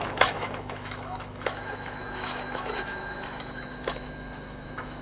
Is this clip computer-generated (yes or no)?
yes